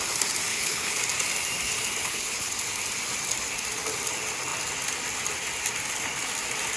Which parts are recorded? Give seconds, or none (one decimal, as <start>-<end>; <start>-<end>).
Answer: 0.0-0.5; 1.0-2.0; 2.5-6.8